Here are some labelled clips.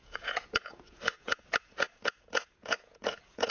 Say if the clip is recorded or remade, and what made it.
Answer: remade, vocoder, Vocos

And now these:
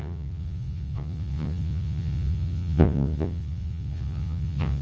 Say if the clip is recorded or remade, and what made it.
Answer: remade, vocoder, Vocos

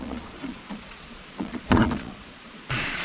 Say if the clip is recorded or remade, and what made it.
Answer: remade, vocoder, Vocos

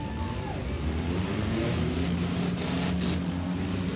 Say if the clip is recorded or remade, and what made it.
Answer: recorded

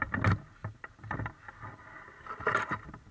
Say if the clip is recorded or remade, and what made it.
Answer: recorded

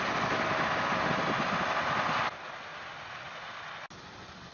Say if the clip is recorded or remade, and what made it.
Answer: recorded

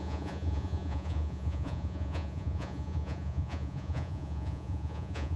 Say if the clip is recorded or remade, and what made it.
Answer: remade, vocoder, Vocos